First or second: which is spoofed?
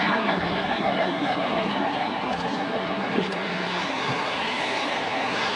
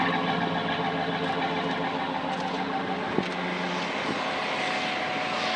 first